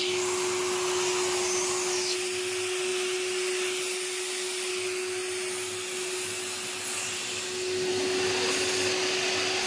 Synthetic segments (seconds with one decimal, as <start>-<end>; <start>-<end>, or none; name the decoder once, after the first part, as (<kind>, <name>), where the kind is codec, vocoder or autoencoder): none